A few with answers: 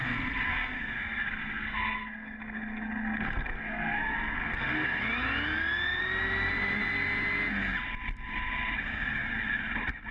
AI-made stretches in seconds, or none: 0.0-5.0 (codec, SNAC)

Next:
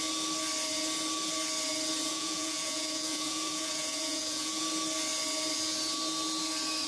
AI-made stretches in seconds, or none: 2.1-4.6 (vocoder, Vocos)

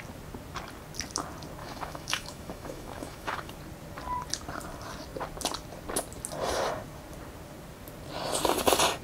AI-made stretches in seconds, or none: 1.6-3.5 (autoencoder, DAC-VAE)

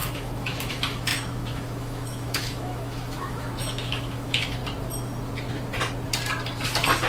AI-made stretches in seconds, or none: 0.0-4.6 (autoencoder, DAC-VAE)